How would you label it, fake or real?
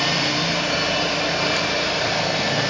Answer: fake